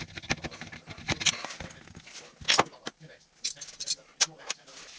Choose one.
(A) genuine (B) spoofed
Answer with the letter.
A